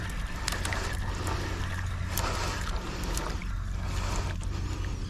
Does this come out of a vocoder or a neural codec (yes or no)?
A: no